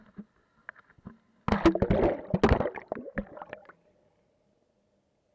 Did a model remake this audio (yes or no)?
no